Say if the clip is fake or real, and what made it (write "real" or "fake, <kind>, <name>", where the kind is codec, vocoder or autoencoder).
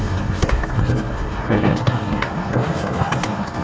fake, codec, SNAC